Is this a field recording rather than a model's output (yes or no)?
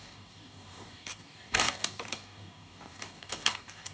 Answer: no